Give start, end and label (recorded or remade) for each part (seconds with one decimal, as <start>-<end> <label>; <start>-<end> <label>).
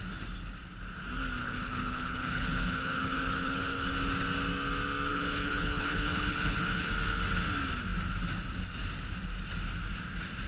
0.0-1.4 recorded; 1.4-3.9 remade; 3.9-5.1 recorded; 5.1-6.9 remade; 6.9-10.5 recorded